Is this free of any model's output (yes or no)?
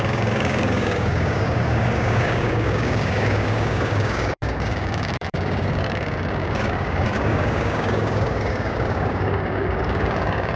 no